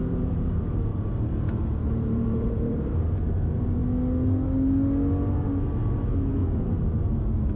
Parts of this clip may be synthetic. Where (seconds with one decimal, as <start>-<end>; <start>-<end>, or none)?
0.0-3.8; 5.7-6.4